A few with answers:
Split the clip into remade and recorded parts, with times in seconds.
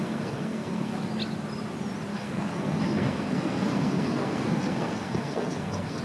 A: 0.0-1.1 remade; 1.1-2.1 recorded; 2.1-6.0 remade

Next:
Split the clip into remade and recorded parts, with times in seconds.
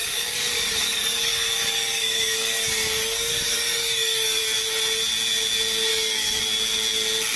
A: 0.0-4.4 remade; 4.4-5.9 recorded; 5.9-6.4 remade; 6.4-7.4 recorded